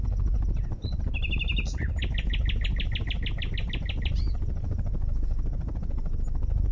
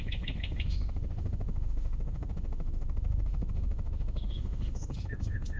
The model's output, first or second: second